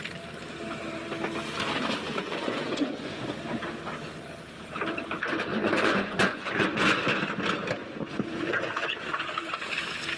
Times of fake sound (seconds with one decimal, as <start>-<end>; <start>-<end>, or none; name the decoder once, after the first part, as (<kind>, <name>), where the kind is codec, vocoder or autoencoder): 2.0-3.2 (vocoder, Vocos); 5.5-7.0; 7.8-9.7